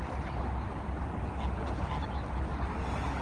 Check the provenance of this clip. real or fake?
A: real